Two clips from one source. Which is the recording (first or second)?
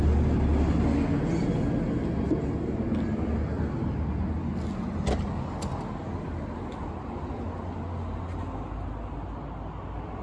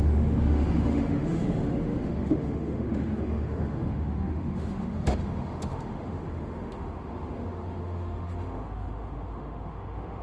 first